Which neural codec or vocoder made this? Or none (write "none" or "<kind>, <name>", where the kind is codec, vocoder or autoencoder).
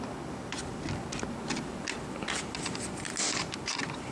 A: none